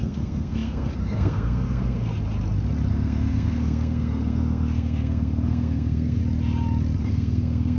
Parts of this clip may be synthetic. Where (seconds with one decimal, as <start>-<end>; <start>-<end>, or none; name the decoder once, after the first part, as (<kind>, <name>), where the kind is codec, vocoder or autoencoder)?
0.0-2.1 (codec, SNAC); 2.9-6.2; 7.0-7.8